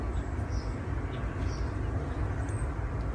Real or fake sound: real